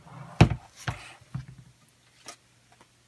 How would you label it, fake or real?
real